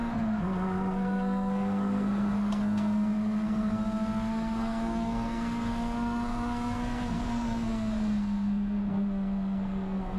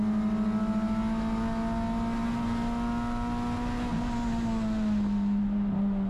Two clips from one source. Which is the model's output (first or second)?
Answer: first